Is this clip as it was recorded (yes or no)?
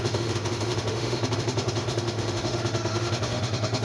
no